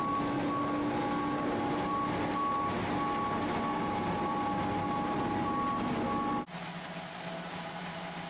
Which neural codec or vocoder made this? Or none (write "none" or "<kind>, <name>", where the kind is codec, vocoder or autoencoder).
none